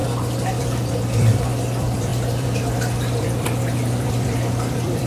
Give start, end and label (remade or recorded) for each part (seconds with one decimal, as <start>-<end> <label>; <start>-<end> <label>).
0.0-0.6 recorded; 0.6-5.1 remade